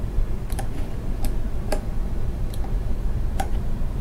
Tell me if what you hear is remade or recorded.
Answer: remade